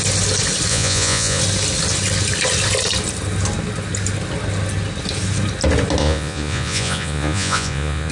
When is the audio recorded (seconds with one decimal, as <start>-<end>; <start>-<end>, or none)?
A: 0.0-0.7; 1.4-6.0